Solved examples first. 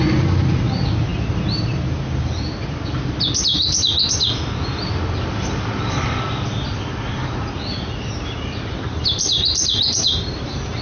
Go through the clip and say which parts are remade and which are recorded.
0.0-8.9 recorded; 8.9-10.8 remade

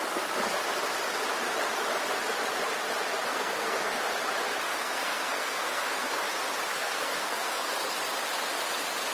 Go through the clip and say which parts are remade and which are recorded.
0.0-3.3 recorded; 3.3-4.0 remade; 4.0-4.7 recorded; 4.7-6.2 remade; 6.2-6.7 recorded; 6.7-7.7 remade; 7.7-9.1 recorded

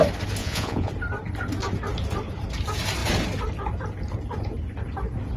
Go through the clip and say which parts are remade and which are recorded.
0.0-0.4 recorded; 0.4-0.9 remade; 0.9-5.4 recorded